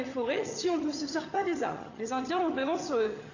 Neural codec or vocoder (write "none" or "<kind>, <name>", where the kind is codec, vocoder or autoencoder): vocoder, HiFi-GAN